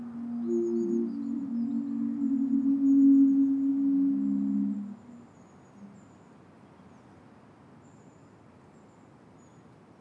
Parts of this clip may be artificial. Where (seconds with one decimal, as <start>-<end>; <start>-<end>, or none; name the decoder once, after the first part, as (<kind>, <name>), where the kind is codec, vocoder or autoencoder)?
none